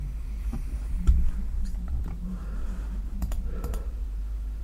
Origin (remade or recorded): remade